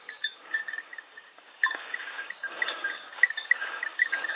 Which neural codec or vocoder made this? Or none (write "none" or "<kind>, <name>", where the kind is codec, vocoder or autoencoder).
codec, DAC